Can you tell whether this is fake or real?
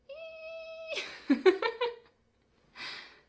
real